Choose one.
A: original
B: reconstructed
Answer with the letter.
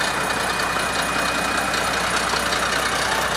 A